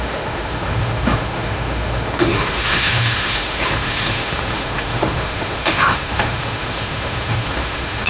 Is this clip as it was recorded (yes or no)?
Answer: no